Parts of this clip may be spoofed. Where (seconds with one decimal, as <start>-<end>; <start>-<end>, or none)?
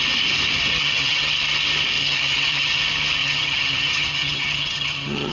0.7-1.3; 2.0-2.8; 3.2-5.3